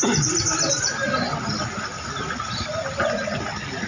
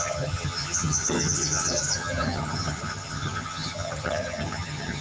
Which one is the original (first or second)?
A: first